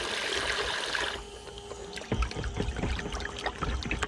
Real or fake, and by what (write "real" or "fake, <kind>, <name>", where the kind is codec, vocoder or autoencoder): real